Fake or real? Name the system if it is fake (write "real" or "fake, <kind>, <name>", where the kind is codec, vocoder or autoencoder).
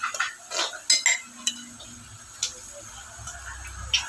real